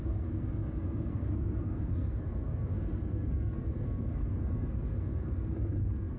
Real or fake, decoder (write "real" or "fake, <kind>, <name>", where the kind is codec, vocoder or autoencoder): fake, codec, SNAC